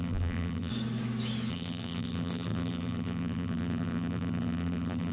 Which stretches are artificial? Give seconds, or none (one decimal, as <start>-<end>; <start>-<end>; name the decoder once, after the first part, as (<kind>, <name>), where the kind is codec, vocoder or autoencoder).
0.0-0.7 (vocoder, BigVGAN v2); 1.5-5.1